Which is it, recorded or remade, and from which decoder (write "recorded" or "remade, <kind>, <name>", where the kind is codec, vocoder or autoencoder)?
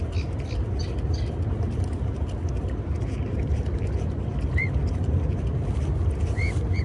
recorded